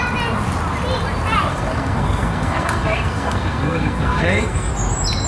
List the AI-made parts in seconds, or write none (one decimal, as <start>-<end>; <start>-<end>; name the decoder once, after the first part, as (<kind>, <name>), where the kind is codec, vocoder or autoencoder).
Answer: 1.5-4.7 (codec, SNAC)